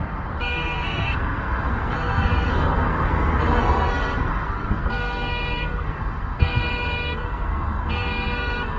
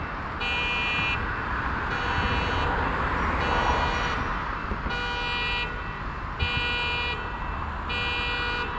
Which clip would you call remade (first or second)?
first